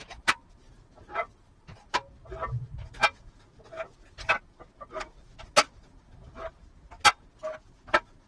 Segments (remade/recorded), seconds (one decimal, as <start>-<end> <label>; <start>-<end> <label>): 0.0-3.0 recorded; 3.0-3.5 remade; 3.5-8.3 recorded